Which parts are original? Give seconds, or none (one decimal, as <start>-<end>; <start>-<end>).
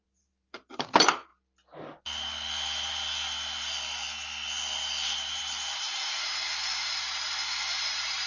1.3-5.3